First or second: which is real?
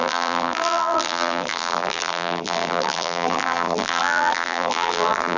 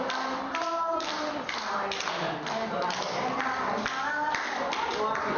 second